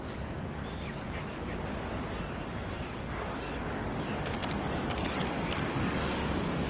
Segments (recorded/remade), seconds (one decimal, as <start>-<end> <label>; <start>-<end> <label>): 0.0-0.6 remade; 0.6-3.0 recorded; 3.0-6.7 remade

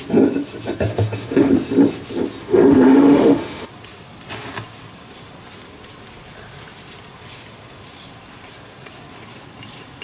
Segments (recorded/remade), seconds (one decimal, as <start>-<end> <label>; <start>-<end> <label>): 0.0-0.9 recorded; 0.9-1.5 remade; 1.5-2.4 recorded; 2.4-3.7 remade; 3.7-10.0 recorded